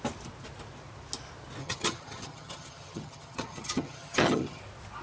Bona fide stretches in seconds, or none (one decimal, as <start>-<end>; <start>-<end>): 0.0-1.6; 4.6-5.0